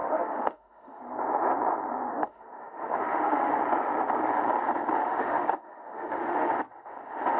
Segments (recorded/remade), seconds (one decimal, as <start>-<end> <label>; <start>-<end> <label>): 0.0-1.0 remade; 1.0-2.1 recorded; 2.1-3.6 remade; 3.6-5.0 recorded; 5.0-6.5 remade; 6.5-7.4 recorded